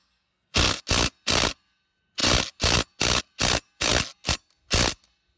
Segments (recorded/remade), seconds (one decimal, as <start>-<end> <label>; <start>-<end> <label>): 0.0-0.8 remade; 0.8-5.4 recorded

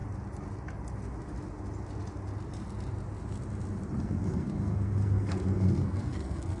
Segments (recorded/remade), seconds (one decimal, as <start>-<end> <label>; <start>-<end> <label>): 0.0-4.0 recorded; 4.0-6.6 remade

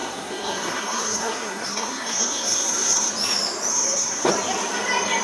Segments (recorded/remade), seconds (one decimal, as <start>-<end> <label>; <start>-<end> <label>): 0.0-3.1 remade; 3.1-3.7 recorded; 3.7-4.3 remade; 4.3-5.2 recorded

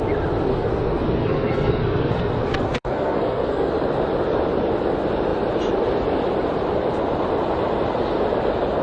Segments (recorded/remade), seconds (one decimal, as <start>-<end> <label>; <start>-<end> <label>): 0.0-0.5 recorded; 0.5-3.7 remade; 3.7-8.8 recorded

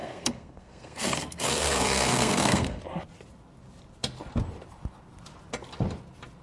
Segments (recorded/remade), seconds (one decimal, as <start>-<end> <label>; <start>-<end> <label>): 0.0-2.8 remade; 2.8-6.4 recorded

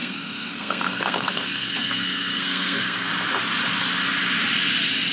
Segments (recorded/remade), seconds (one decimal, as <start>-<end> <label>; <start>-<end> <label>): 0.0-3.1 remade; 3.1-5.1 recorded

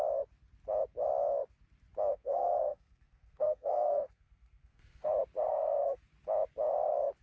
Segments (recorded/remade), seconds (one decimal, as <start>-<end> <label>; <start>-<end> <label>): 0.0-2.1 recorded; 2.1-5.1 remade; 5.1-5.5 recorded; 5.5-6.0 remade; 6.0-7.2 recorded